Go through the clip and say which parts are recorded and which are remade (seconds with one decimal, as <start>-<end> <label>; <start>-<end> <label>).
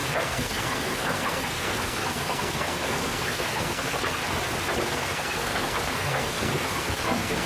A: 0.0-4.2 remade; 4.2-4.8 recorded; 4.8-7.5 remade